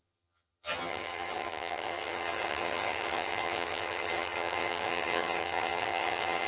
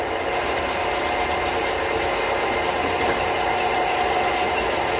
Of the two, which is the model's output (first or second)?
first